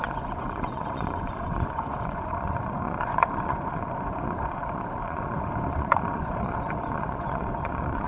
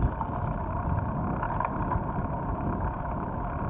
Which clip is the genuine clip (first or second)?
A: second